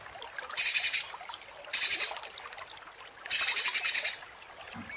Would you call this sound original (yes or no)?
yes